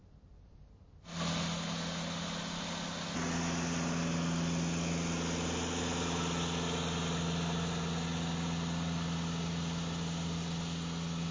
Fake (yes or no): no